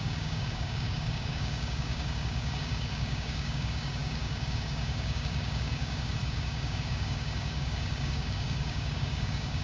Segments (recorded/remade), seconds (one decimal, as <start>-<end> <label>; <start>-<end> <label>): 0.0-9.6 remade